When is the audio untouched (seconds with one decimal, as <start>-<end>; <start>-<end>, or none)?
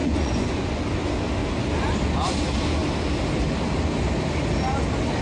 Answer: 0.8-5.2